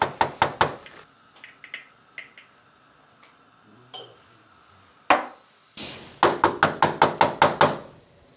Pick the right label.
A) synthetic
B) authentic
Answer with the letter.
B